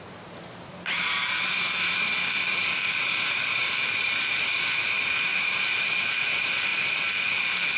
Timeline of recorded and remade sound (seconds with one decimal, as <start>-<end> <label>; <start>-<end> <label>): 0.0-2.1 remade; 2.1-3.2 recorded; 3.2-6.7 remade; 6.7-7.8 recorded